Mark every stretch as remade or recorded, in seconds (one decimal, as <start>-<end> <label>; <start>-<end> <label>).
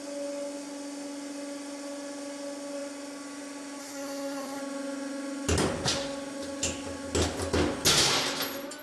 0.0-3.8 recorded; 3.8-4.6 remade; 4.6-8.8 recorded